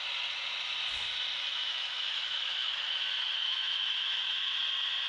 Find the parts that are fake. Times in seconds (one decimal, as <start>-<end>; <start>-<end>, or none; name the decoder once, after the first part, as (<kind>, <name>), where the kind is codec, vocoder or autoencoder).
1.5-4.6 (autoencoder, DAC-VAE)